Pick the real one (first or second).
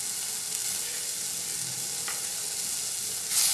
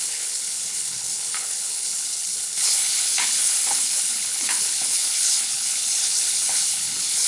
first